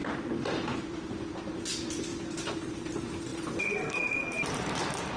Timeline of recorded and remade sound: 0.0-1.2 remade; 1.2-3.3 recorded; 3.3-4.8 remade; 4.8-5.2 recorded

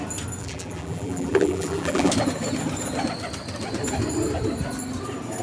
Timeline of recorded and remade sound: 0.0-0.4 recorded; 0.4-2.1 remade; 2.1-5.4 recorded